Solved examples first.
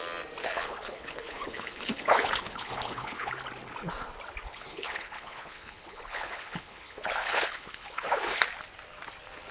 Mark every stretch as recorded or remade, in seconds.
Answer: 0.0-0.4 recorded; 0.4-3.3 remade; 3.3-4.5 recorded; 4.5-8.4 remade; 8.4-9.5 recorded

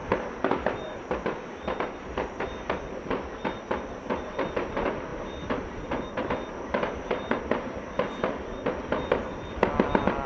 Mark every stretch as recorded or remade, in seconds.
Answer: 0.0-10.3 recorded